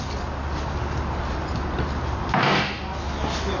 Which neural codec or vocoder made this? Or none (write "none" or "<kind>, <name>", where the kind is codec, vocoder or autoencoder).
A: none